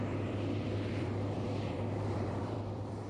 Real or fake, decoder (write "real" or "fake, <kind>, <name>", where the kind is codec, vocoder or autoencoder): fake, vocoder, BigVGAN v2